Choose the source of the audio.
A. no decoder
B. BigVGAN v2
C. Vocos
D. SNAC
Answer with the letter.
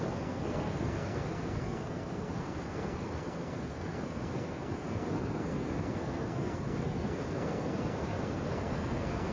D